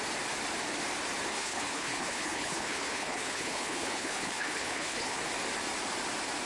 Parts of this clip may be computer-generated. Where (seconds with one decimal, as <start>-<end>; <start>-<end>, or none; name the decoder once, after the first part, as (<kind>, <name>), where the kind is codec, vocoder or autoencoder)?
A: 1.3-5.2 (codec, HILCodec)